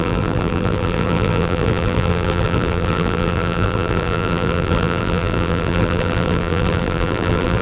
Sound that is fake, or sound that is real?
fake